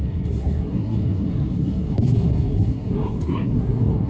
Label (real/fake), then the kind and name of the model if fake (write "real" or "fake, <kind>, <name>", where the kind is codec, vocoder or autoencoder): fake, codec, SNAC